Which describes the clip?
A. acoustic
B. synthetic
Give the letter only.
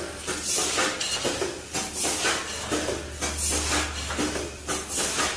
A